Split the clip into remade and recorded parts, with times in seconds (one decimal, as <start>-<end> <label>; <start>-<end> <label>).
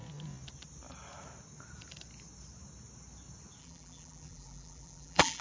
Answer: 0.0-3.6 recorded; 3.6-5.4 remade